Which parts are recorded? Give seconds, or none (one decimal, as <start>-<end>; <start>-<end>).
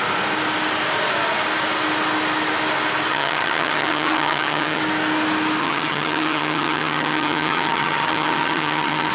0.0-3.1; 4.8-5.6